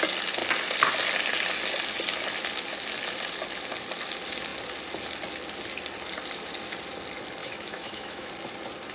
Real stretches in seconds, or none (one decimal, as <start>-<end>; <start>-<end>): 0.0-7.4; 8.3-8.9